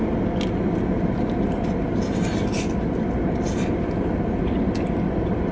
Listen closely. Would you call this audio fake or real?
real